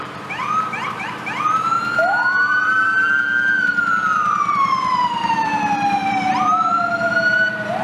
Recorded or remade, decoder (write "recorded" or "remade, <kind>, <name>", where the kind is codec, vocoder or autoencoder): remade, vocoder, BigVGAN v2